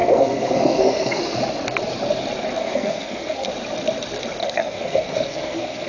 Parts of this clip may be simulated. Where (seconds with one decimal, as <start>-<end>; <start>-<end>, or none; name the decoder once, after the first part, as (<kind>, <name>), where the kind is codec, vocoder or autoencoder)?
0.0-1.2 (codec, SNAC); 2.6-3.5; 4.4-5.9